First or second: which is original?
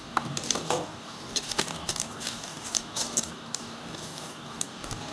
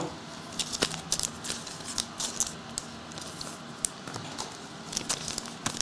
second